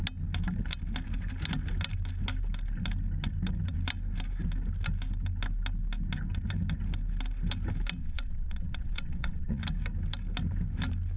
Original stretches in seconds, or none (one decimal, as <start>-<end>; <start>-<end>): 0.0-8.0; 9.6-11.2